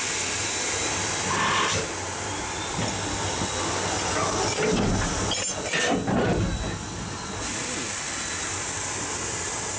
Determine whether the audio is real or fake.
real